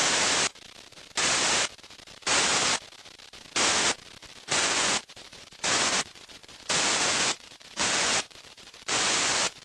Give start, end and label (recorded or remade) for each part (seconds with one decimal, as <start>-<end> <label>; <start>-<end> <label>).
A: 0.0-4.4 recorded; 4.4-9.6 remade